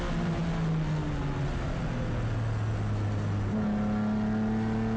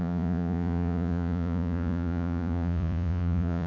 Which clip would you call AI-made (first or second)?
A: second